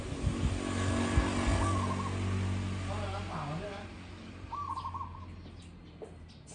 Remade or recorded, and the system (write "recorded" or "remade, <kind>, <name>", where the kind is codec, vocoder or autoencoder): recorded